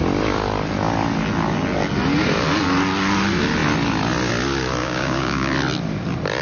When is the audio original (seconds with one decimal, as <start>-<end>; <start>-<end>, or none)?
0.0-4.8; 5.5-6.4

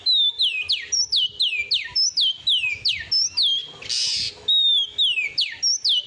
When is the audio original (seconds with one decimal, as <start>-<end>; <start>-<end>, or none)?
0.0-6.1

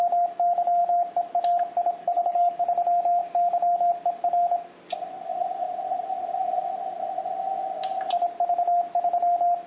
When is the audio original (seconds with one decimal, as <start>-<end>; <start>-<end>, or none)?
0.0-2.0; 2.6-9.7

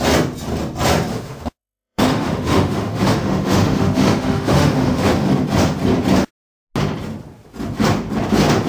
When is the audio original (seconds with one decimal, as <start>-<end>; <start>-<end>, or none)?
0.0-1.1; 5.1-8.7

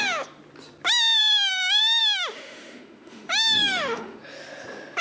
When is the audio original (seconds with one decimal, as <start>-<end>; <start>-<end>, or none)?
0.0-1.2; 4.2-5.0